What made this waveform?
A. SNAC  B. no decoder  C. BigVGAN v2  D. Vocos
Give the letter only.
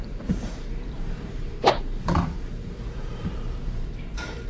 C